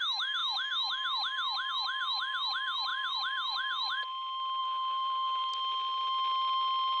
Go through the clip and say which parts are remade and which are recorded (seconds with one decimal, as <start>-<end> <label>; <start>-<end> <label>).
0.0-2.9 recorded; 2.9-4.1 remade; 4.1-4.6 recorded; 4.6-5.5 remade; 5.5-7.0 recorded